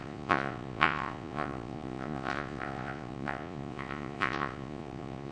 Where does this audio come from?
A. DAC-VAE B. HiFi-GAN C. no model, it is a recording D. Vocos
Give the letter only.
D